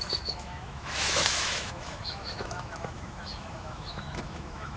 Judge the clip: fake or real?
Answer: fake